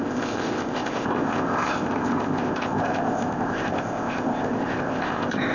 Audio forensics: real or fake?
fake